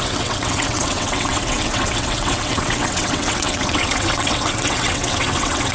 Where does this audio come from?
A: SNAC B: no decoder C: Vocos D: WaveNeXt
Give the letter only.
D